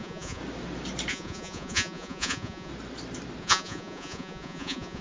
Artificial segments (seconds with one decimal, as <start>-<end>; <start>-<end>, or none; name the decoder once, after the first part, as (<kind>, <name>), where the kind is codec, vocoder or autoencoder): 0.0-0.4 (vocoder, Vocos); 1.1-2.7; 3.4-5.0